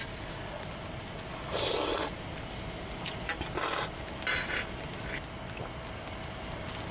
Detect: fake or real real